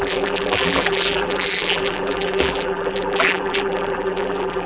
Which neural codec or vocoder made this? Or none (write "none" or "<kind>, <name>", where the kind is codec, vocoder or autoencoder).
vocoder, BigVGAN v2